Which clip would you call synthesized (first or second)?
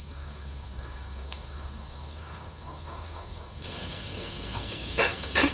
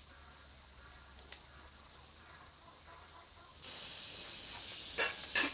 first